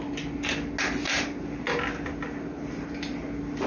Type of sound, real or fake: real